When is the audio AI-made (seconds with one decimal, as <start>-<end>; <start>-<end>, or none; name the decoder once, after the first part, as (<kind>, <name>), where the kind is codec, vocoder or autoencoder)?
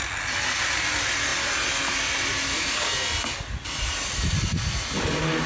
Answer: none